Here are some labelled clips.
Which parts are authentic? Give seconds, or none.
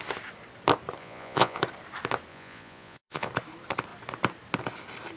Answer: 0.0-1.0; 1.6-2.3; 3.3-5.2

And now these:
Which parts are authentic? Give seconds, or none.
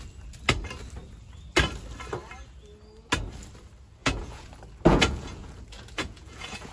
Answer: 0.0-4.0; 4.5-4.9